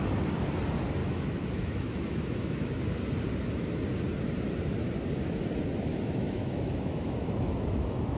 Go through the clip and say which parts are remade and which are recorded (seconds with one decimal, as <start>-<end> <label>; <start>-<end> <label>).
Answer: 0.0-1.0 recorded; 1.0-2.8 remade; 2.8-5.9 recorded; 5.9-8.2 remade